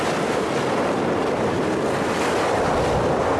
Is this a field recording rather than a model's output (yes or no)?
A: yes